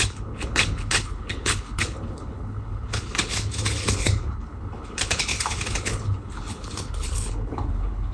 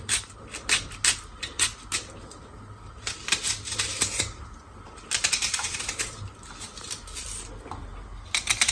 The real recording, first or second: second